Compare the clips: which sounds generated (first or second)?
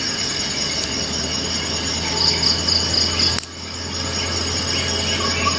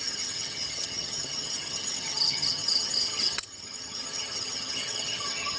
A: second